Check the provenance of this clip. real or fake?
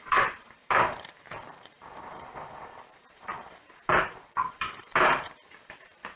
fake